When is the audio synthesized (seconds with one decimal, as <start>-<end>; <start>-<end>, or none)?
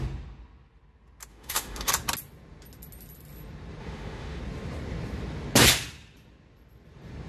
1.3-1.9; 3.8-4.4